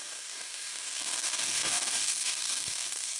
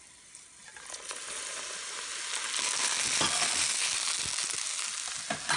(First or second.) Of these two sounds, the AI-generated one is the first